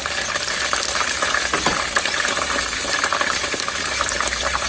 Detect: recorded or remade remade